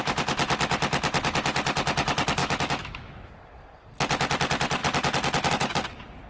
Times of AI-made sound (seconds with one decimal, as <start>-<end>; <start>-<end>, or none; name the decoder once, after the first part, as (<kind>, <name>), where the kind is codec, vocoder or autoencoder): 2.4-3.3 (autoencoder, DAC-VAE)